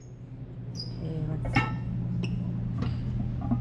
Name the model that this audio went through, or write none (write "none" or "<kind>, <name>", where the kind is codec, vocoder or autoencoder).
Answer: none